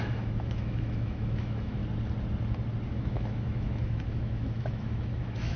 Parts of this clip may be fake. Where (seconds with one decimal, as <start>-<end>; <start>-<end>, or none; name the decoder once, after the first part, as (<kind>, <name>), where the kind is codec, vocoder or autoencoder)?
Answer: 0.0-1.8 (autoencoder, DAC-VAE); 2.9-5.6